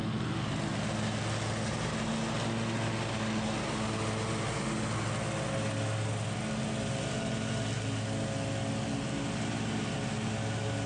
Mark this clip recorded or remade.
recorded